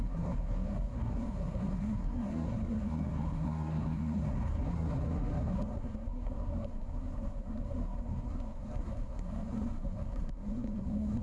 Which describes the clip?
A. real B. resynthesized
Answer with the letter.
B